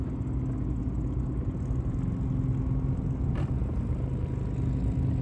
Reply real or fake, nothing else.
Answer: real